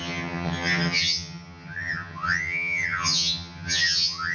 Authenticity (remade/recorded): remade